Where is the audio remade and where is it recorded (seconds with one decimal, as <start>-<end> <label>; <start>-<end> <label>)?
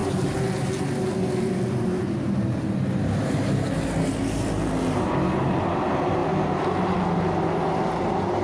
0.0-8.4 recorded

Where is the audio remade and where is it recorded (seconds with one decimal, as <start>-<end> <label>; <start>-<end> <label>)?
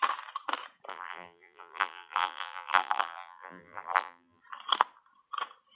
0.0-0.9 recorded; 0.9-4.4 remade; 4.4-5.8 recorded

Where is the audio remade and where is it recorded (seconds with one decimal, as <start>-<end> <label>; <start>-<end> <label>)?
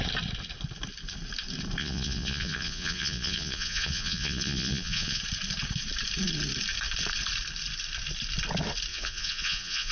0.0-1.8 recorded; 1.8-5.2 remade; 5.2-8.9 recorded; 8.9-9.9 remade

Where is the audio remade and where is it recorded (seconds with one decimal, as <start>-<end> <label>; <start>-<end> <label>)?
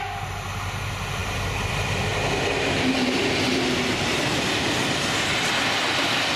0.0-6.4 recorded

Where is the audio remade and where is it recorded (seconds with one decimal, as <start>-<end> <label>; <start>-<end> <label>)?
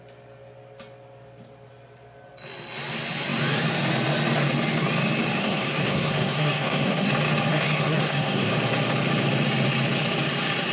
0.0-5.4 recorded; 5.4-7.1 remade; 7.1-7.5 recorded; 7.5-8.5 remade; 8.5-10.7 recorded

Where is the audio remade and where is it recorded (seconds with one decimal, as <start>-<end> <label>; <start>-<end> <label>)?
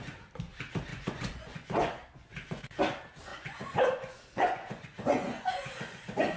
0.0-0.9 recorded; 0.9-2.8 remade; 2.8-3.3 recorded; 3.3-6.4 remade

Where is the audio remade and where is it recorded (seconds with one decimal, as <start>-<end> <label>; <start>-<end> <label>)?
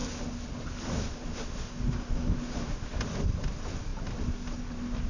0.0-0.9 recorded; 0.9-3.0 remade; 3.0-5.1 recorded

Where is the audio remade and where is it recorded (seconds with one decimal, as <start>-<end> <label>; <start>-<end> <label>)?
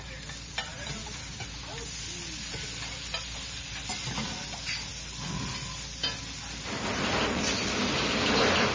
0.0-0.7 recorded; 0.7-1.6 remade; 1.6-8.7 recorded